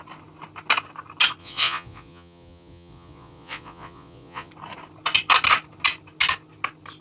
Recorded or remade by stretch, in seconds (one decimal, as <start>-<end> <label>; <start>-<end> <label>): 0.0-1.4 recorded; 1.4-4.5 remade; 4.5-7.0 recorded